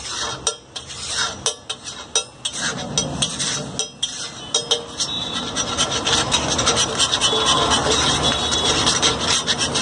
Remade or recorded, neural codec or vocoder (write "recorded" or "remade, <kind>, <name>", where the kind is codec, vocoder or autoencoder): recorded